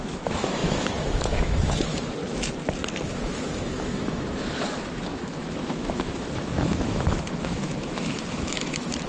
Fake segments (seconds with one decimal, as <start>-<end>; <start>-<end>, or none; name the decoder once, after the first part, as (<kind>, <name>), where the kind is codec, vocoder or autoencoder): 0.0-2.2 (autoencoder, DAC-VAE); 3.0-9.1